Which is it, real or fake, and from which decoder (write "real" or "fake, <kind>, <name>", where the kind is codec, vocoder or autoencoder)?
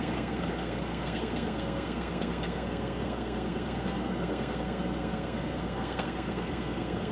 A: fake, codec, SNAC